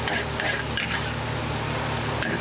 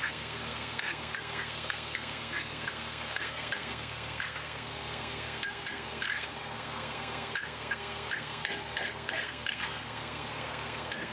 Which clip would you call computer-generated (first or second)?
second